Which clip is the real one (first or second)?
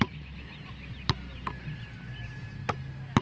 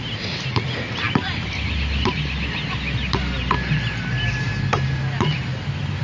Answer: second